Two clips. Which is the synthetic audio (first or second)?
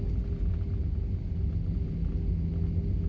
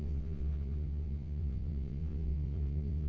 second